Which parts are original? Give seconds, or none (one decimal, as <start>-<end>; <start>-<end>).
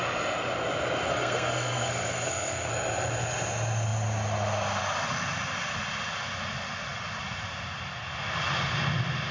0.0-1.1; 2.7-9.3